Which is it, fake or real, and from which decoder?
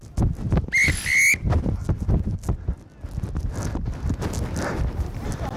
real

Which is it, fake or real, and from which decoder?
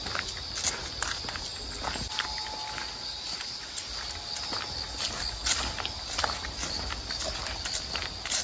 real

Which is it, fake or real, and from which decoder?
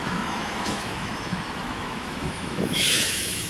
fake, autoencoder, DAC-VAE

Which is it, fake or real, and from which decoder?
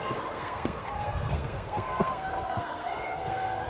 fake, codec, SNAC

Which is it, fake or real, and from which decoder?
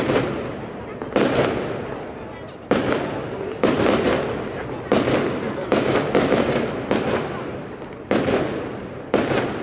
real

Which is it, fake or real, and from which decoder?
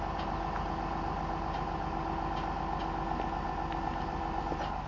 real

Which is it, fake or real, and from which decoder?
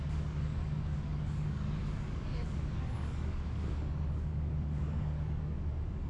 fake, codec, DAC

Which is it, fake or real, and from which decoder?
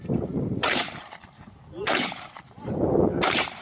fake, vocoder, BigVGAN v2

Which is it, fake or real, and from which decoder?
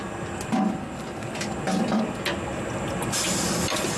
real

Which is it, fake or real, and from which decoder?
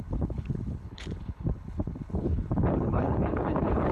fake, codec, HILCodec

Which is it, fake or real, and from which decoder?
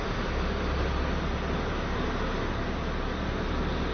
real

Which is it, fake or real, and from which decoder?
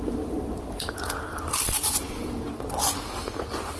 fake, vocoder, BigVGAN v2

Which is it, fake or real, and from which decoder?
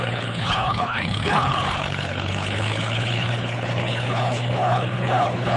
fake, codec, HILCodec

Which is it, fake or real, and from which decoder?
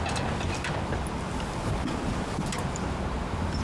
real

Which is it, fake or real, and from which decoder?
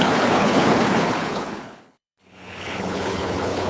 fake, codec, HILCodec